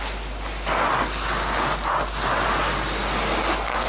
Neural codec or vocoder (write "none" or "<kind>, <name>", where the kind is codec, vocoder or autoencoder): none